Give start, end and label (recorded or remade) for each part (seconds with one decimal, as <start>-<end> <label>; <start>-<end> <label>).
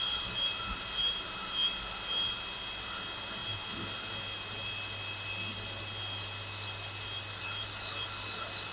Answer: 0.0-8.7 recorded